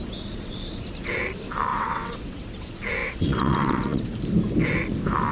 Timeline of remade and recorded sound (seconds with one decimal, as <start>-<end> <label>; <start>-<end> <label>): 0.0-1.7 recorded; 1.7-2.4 remade; 2.4-3.0 recorded; 3.0-4.0 remade; 4.0-5.3 recorded